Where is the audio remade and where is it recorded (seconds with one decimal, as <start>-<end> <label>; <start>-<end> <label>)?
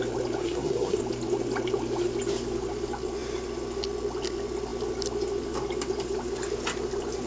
0.0-0.4 recorded; 0.4-1.0 remade; 1.0-7.3 recorded